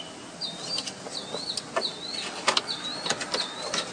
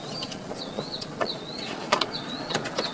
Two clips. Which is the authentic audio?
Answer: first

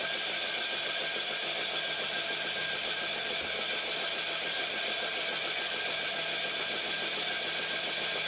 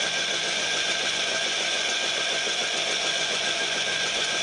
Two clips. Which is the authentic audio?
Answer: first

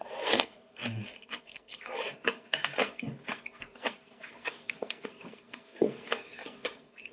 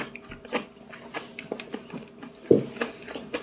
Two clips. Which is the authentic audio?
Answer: second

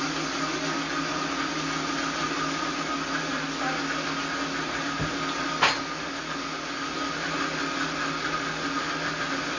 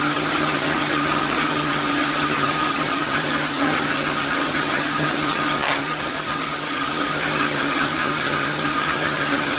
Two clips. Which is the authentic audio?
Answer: first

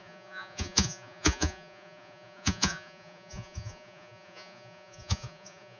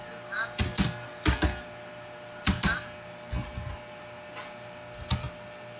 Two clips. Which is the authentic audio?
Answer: second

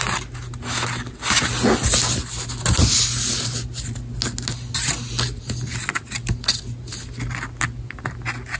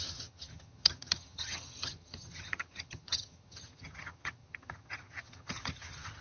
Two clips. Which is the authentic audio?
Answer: first